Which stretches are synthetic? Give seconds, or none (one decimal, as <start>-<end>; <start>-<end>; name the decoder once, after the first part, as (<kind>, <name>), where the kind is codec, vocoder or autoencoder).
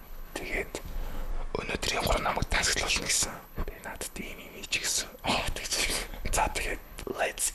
0.0-1.3 (codec, HILCodec); 2.1-7.5